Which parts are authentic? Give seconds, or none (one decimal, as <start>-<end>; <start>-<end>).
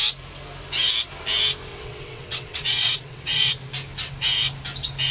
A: 0.0-1.7; 3.5-5.1